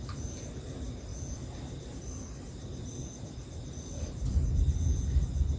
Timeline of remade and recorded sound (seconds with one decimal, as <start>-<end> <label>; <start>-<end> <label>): 0.0-5.6 recorded